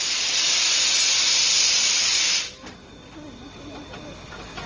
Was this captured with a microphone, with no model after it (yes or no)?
yes